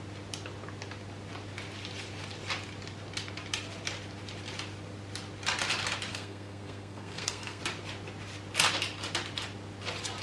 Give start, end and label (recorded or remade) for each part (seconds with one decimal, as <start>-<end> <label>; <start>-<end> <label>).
0.0-6.1 recorded; 6.1-7.6 remade; 7.6-10.2 recorded